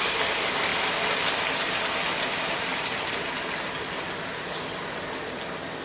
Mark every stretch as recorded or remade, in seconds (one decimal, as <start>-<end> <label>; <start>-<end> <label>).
0.0-5.8 recorded